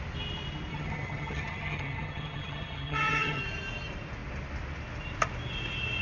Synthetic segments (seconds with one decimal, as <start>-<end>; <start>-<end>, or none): 0.7-3.4